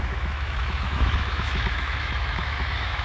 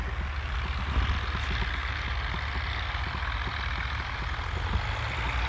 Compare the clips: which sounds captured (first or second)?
second